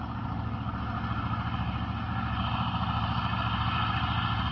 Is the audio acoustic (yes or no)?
yes